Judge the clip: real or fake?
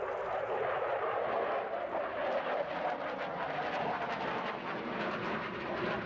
real